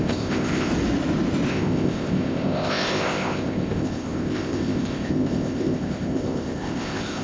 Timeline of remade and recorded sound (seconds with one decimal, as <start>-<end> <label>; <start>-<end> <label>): 0.0-0.7 remade; 0.7-1.5 recorded; 1.5-7.2 remade